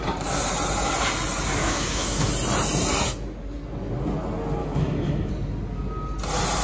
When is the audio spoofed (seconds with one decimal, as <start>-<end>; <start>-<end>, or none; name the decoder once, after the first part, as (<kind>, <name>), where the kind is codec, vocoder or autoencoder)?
1.6-2.3 (autoencoder, DAC-VAE); 4.6-5.3